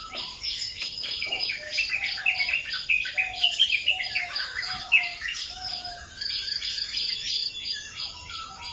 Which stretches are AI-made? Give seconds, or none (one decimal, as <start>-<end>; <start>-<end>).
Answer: 0.0-1.7; 4.2-8.7